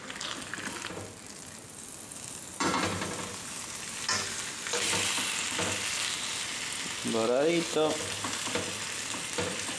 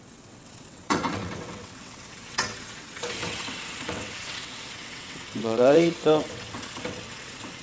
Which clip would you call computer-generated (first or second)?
second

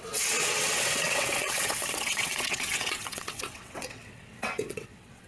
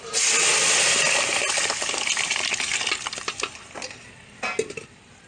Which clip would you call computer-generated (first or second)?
first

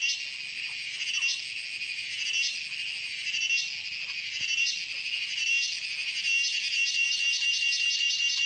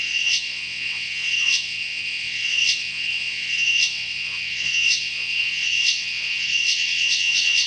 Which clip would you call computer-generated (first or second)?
second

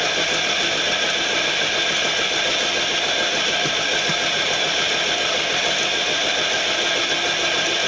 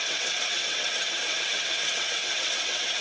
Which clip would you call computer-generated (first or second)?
second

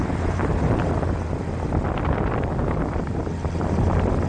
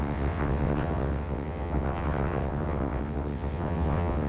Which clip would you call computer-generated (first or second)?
second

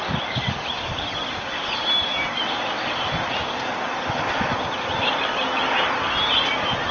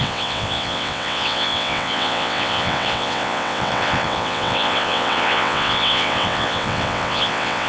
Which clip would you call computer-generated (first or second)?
second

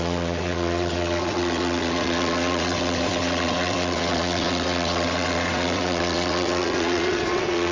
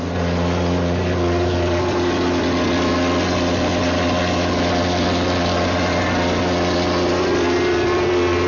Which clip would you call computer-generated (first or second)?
first